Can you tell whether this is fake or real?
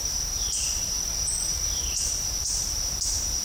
fake